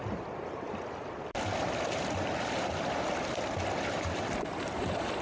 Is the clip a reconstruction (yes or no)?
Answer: yes